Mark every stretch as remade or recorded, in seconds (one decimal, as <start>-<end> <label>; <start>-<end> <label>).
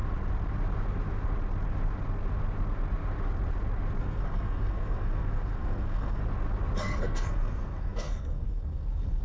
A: 0.0-4.0 recorded; 4.0-6.2 remade; 6.2-6.8 recorded; 6.8-9.2 remade